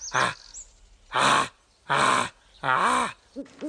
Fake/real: real